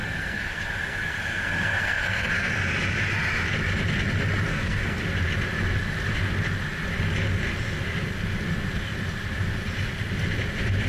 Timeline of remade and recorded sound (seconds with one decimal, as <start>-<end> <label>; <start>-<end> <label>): 0.0-2.5 remade; 2.5-4.5 recorded; 4.5-5.0 remade; 5.0-10.9 recorded